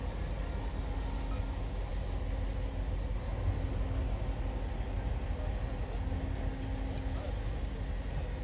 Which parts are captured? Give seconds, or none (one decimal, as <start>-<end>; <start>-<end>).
0.0-8.4